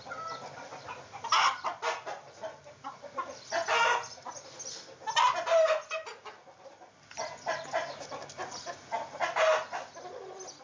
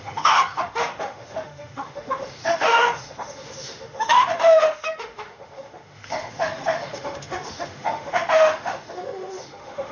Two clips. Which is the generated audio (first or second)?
second